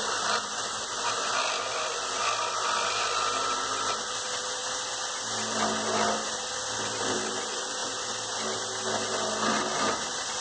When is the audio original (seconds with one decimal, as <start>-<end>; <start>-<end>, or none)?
4.6-6.3; 7.8-9.3